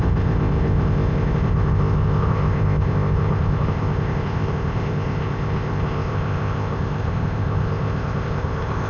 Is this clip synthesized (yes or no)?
yes